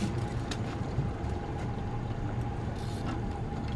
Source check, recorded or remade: remade